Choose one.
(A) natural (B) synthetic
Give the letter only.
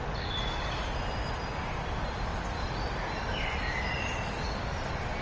A